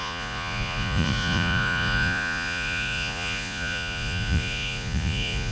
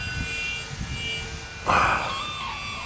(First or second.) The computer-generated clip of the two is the first